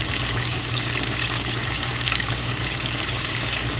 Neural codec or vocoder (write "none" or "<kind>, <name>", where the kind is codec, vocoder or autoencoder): codec, DAC